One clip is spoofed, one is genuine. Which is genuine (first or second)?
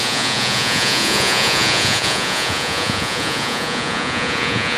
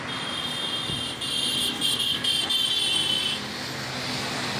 second